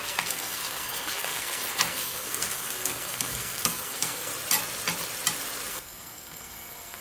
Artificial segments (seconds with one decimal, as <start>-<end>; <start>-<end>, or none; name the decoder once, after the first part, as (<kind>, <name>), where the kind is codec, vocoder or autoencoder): 0.0-4.3 (codec, SNAC); 5.7-7.0